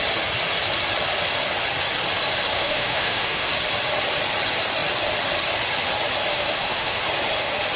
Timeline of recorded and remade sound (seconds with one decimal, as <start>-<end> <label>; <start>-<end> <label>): 0.0-2.5 recorded; 2.5-3.5 remade; 3.5-6.3 recorded; 6.3-7.0 remade; 7.0-7.8 recorded